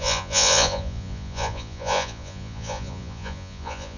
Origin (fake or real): fake